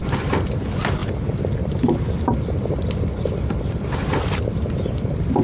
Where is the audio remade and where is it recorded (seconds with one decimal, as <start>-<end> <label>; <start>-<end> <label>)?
0.0-5.4 recorded